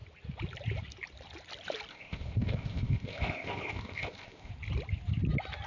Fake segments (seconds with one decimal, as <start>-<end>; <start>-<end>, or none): 1.9-4.5